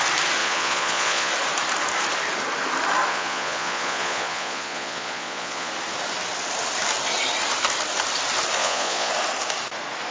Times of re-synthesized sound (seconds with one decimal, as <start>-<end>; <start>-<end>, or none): 0.4-1.3; 3.1-5.7; 8.6-9.1